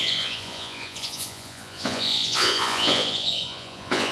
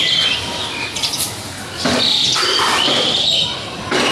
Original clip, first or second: second